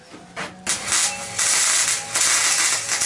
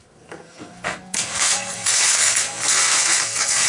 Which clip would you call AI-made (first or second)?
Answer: second